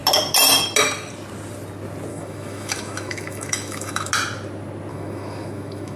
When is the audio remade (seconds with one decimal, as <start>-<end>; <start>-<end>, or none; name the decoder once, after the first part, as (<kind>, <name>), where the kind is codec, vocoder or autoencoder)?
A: 2.1-4.1 (autoencoder, DAC-VAE); 4.9-6.0